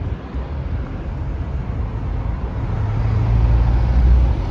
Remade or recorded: recorded